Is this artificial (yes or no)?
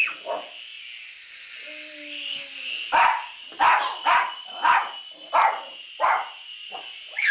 no